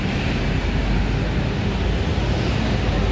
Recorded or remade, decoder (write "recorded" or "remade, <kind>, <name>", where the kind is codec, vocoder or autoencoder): recorded